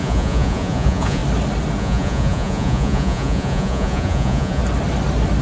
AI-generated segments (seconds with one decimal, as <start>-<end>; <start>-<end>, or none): 0.0-1.2; 1.8-4.6